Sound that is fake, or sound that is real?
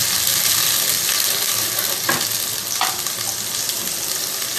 real